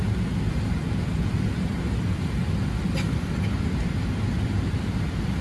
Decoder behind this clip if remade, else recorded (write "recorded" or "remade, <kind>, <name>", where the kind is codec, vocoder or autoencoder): recorded